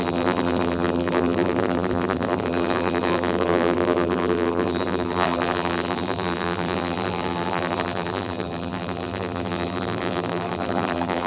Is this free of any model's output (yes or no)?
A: no